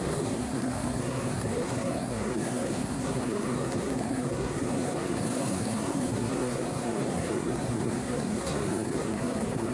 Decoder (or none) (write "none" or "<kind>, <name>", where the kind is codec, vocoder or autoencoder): codec, SNAC